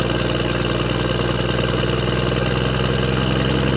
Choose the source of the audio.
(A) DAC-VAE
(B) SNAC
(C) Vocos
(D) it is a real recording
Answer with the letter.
D